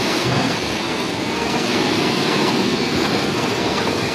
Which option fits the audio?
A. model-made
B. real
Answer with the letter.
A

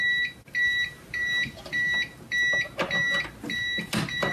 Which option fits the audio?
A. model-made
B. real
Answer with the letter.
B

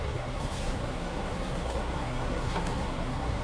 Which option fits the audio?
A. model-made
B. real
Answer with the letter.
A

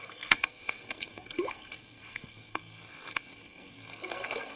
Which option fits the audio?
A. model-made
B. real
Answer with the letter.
A